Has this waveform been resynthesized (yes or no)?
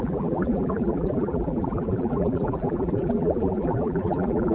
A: yes